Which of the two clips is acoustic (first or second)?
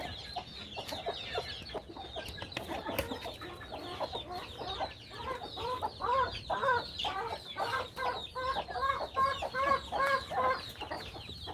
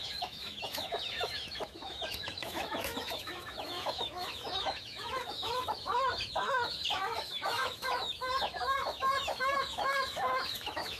first